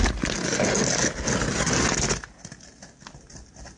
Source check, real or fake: real